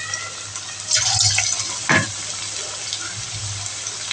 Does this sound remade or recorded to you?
recorded